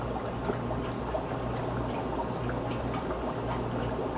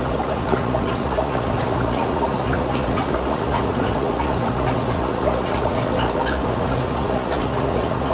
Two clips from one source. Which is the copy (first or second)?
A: second